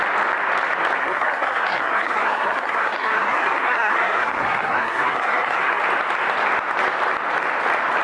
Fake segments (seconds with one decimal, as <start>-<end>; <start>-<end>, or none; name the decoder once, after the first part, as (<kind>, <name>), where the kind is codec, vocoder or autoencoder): 1.0-5.8 (codec, SNAC)